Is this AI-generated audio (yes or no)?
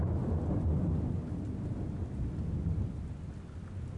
no